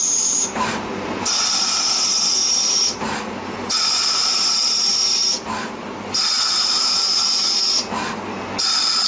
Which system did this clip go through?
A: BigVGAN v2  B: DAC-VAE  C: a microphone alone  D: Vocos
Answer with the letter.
C